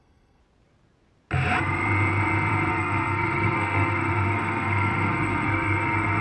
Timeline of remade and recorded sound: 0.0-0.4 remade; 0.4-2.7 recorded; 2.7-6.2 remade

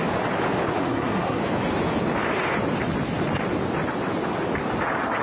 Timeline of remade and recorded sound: 0.0-0.8 recorded; 0.8-1.4 remade; 1.4-5.2 recorded

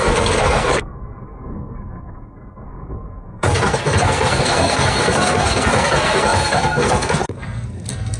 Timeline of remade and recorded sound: 0.0-8.2 remade

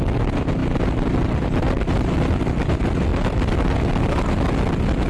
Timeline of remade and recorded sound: 0.0-5.1 recorded

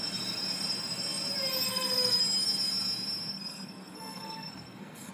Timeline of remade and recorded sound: 0.0-1.7 recorded; 1.7-2.2 remade; 2.2-3.3 recorded; 3.3-5.1 remade

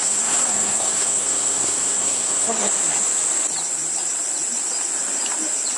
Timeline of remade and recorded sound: 0.0-2.7 remade; 2.7-5.8 recorded

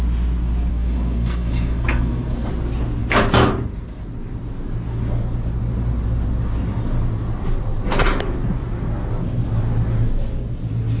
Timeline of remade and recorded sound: 0.0-0.7 recorded; 0.7-2.5 remade; 2.5-11.0 recorded